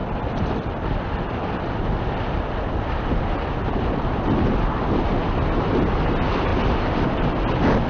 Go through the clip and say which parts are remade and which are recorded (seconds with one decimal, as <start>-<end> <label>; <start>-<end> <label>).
0.0-7.9 recorded